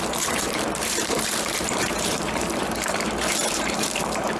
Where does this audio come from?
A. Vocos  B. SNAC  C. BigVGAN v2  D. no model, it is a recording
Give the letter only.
C